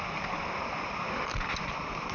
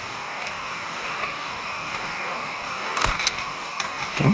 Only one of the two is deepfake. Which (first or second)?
second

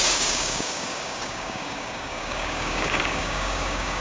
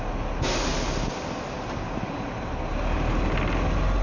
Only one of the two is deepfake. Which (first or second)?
first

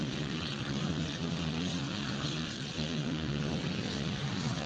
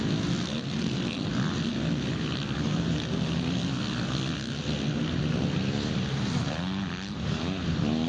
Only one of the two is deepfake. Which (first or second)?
first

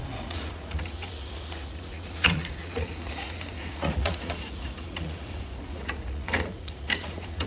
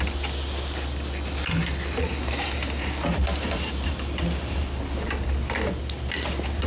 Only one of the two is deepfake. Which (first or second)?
first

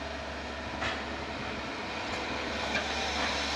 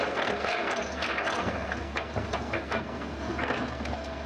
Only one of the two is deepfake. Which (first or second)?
second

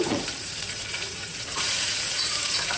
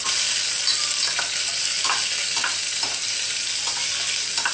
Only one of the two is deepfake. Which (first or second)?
first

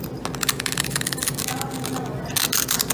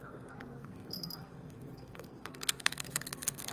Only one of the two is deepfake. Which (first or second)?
second